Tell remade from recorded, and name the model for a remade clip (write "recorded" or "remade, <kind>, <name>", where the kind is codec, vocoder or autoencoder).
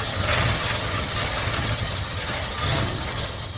remade, vocoder, HiFi-GAN